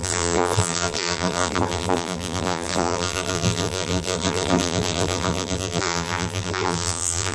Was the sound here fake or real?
fake